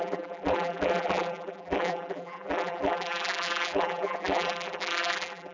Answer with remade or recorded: remade